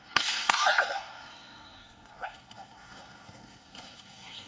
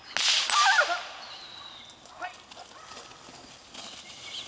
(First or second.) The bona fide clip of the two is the second